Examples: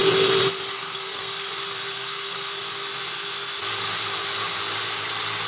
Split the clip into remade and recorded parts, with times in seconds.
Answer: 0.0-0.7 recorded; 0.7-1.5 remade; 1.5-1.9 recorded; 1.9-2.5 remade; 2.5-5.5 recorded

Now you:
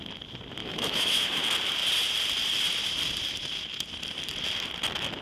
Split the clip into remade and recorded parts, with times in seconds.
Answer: 0.0-0.6 recorded; 0.6-1.4 remade; 1.4-5.2 recorded

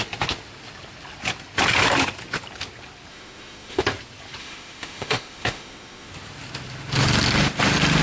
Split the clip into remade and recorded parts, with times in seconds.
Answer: 0.0-3.1 recorded; 3.1-3.8 remade; 3.8-4.4 recorded; 4.4-6.1 remade; 6.1-8.0 recorded

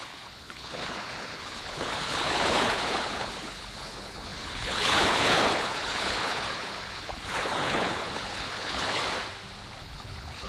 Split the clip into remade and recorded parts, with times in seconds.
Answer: 0.0-9.0 remade; 9.0-9.8 recorded; 9.8-10.5 remade

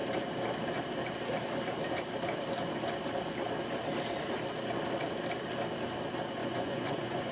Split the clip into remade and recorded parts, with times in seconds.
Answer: 0.0-6.4 recorded; 6.4-7.3 remade